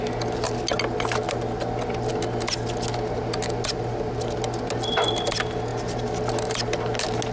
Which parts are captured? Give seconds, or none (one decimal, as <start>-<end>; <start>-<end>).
0.0-7.3